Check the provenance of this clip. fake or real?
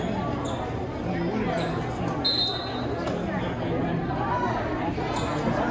real